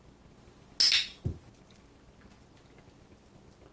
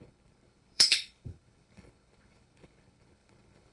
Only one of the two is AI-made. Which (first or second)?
second